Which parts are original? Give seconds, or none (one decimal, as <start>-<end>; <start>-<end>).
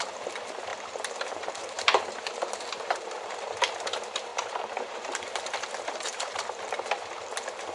none